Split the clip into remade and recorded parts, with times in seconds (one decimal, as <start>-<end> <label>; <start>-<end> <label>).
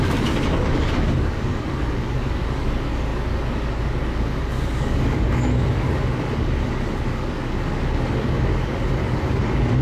0.0-9.8 remade